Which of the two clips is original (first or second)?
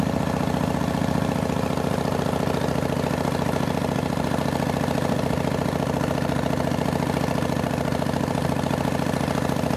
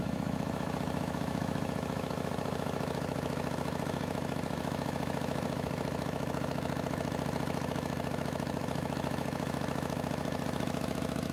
first